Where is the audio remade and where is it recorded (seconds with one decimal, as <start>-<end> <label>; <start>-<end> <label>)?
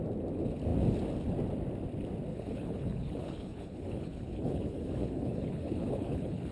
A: 0.0-2.3 recorded; 2.3-6.5 remade